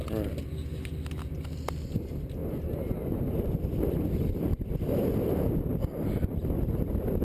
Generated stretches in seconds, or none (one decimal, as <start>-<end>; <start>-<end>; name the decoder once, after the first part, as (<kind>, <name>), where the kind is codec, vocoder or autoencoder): none